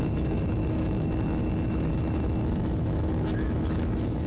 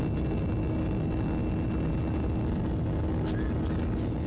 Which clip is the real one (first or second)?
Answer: second